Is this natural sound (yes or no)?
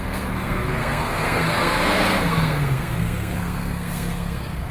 no